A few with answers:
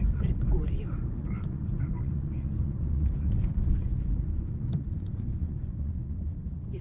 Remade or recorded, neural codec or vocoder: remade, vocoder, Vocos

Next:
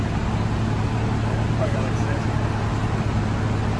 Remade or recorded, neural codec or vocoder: recorded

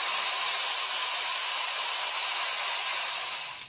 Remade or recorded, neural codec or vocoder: remade, vocoder, BigVGAN v2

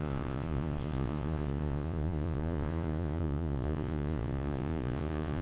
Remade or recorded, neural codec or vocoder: remade, vocoder, Vocos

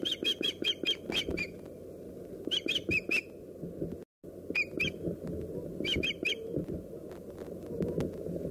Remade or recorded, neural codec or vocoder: recorded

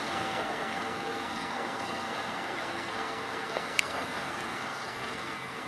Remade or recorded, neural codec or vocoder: remade, codec, SNAC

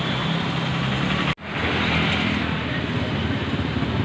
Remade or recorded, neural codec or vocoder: recorded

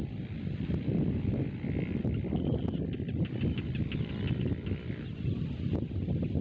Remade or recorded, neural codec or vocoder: recorded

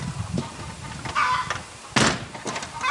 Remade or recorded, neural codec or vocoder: recorded